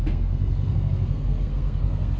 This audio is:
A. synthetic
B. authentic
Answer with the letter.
A